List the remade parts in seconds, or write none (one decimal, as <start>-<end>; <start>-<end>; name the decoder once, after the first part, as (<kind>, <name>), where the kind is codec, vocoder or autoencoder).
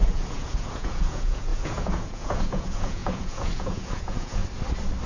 0.0-4.4 (vocoder, Vocos)